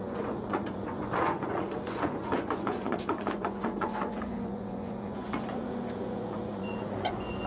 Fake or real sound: fake